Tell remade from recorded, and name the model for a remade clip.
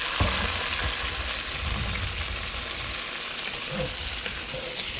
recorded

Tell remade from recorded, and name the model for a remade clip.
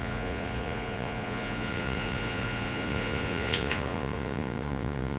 remade, vocoder, Vocos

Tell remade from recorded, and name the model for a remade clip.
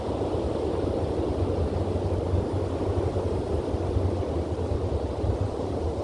recorded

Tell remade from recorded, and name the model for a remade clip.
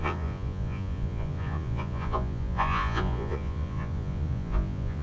remade, vocoder, Vocos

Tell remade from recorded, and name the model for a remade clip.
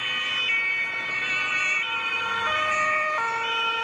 recorded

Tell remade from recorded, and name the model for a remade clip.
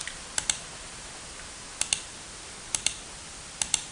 recorded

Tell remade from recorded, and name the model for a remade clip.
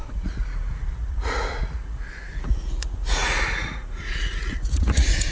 remade, vocoder, Vocos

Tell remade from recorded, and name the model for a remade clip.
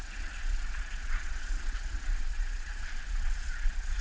remade, vocoder, Vocos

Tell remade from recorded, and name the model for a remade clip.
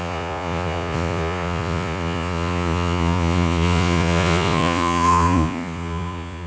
remade, vocoder, Vocos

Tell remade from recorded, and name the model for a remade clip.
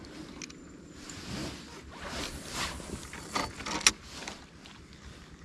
recorded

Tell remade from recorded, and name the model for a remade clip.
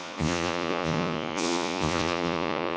remade, vocoder, Vocos